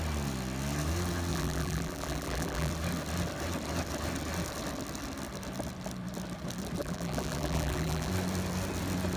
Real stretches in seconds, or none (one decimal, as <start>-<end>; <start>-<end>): 0.0-1.3; 2.7-6.8; 8.1-9.2